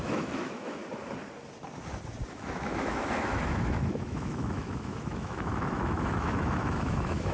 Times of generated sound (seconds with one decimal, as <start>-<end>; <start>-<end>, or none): 0.0-0.8; 2.3-7.3